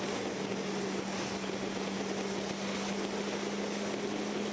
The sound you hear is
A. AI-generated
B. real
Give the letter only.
B